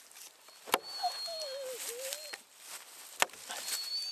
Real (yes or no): yes